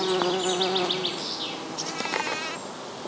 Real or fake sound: real